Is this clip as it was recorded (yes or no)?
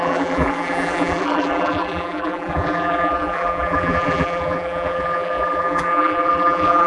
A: no